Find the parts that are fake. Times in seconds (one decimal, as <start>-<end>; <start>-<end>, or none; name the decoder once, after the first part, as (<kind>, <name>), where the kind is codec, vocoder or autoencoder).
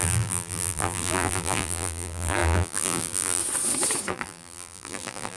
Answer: 0.0-3.4 (vocoder, BigVGAN v2); 4.1-5.4